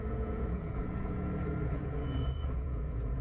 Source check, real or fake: fake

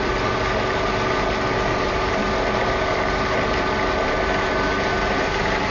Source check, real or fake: real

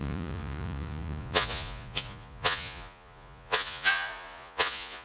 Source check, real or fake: fake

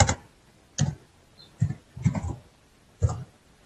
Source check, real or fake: real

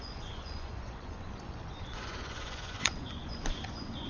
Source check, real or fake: fake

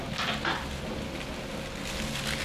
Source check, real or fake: real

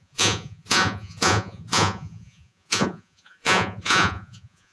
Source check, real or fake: fake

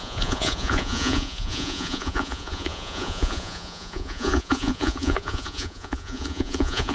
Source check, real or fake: fake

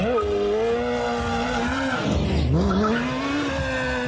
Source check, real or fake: real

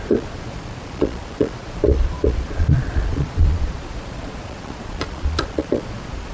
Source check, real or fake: fake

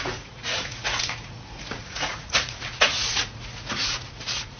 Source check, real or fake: fake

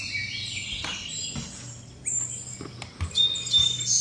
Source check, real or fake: real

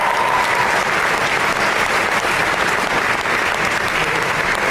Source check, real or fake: real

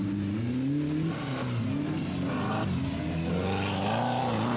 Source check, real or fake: real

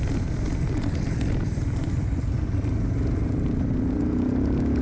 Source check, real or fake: real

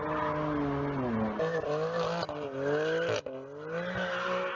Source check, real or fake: real